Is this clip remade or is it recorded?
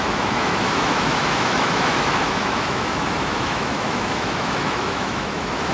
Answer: remade